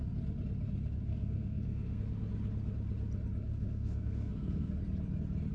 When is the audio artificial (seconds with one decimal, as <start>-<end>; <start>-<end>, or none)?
1.1-2.0; 3.5-4.7